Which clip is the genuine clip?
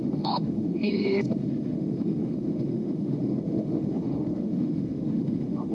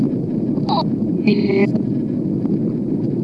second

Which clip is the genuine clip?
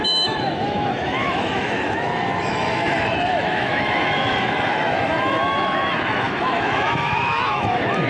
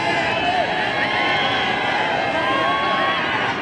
second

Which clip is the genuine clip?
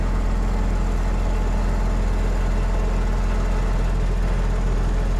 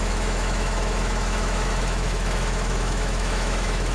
first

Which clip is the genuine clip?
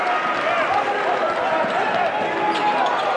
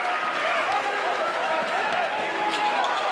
first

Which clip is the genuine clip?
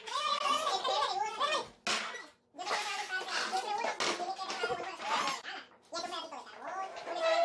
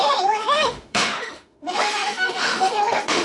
first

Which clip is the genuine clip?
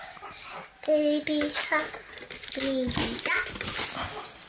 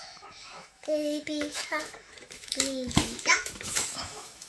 first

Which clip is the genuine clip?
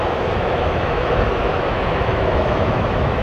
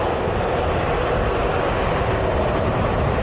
second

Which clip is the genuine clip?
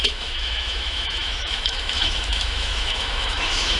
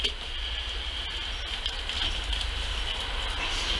second